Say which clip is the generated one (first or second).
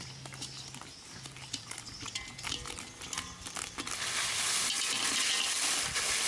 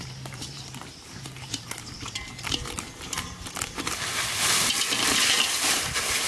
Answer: second